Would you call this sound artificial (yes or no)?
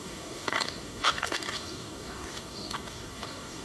yes